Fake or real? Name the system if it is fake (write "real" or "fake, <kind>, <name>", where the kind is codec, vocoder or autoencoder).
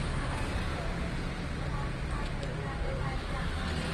real